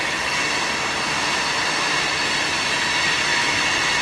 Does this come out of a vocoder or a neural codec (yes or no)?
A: no